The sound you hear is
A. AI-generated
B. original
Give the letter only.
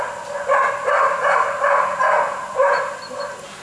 B